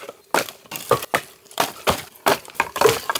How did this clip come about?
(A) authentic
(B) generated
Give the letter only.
A